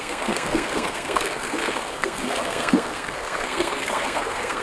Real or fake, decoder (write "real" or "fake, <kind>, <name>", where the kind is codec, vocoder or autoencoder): fake, codec, SNAC